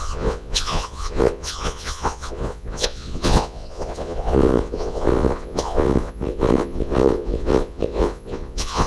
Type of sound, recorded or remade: remade